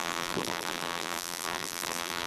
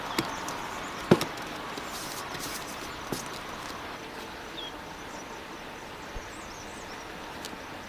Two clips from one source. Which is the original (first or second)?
second